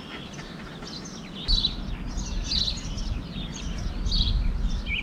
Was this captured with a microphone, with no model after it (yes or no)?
yes